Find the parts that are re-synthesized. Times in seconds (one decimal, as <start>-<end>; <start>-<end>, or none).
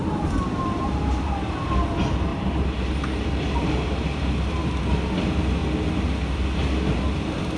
0.0-1.7; 2.3-4.7